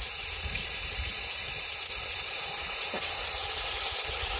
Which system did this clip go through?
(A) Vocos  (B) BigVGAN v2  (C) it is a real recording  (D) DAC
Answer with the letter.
B